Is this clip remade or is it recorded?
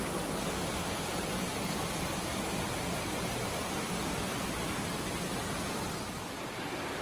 recorded